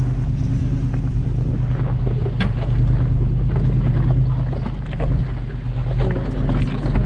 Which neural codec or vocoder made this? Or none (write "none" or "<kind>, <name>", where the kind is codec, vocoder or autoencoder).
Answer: none